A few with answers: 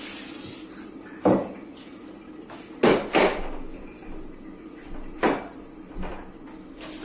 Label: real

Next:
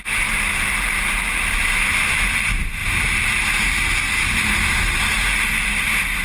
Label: real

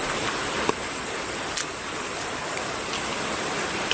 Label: real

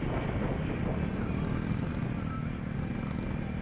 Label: real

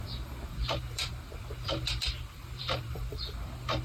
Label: fake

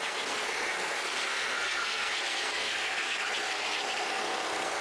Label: fake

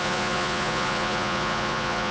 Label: fake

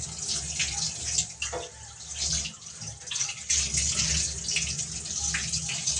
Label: real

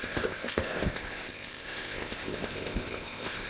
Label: fake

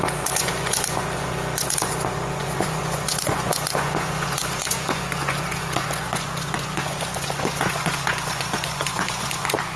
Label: fake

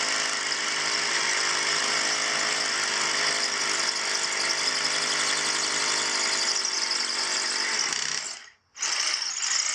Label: real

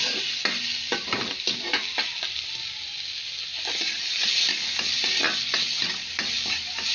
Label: real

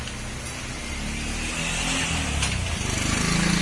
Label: real